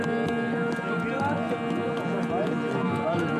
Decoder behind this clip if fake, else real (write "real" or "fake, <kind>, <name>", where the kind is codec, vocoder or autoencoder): real